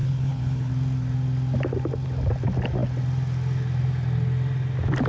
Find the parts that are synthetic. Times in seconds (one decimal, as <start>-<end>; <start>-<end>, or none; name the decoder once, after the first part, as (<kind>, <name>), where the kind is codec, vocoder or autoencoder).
0.0-0.7 (codec, HILCodec)